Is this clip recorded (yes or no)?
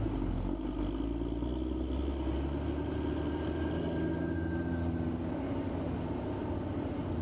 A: yes